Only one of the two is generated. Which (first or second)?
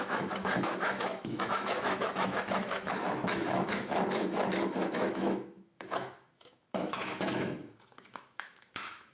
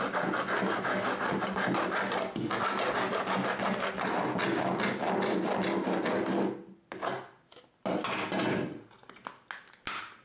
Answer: first